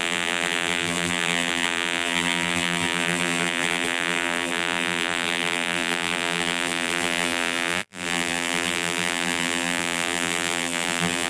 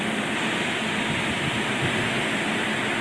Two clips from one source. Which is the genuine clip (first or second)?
second